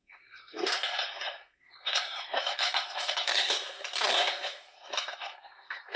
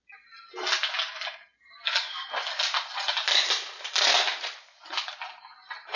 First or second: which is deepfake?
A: first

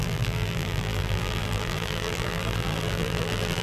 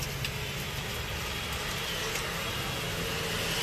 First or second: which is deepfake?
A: first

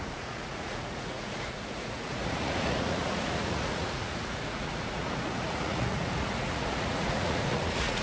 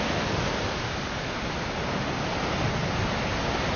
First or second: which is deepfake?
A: first